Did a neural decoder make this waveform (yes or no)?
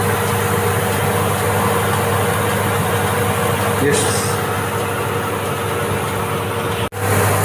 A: no